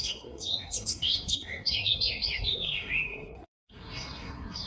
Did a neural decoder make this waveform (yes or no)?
yes